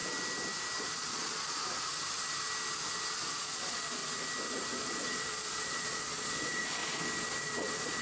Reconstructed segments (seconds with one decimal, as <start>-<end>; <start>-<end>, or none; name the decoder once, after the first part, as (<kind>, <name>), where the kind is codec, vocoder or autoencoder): 0.8-1.6 (vocoder, Vocos); 3.4-4.0; 4.8-6.8; 7.4-8.0